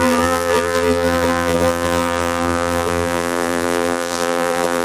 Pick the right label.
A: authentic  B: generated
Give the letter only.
B